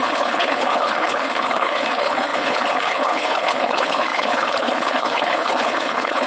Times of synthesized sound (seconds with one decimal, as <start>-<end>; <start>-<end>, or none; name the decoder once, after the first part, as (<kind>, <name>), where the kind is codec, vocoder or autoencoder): 0.0-6.3 (codec, HILCodec)